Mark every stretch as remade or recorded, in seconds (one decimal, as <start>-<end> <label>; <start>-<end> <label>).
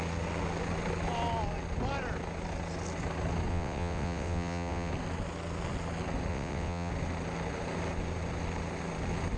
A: 0.0-3.5 recorded; 3.5-4.9 remade; 4.9-6.3 recorded; 6.3-6.9 remade; 6.9-9.4 recorded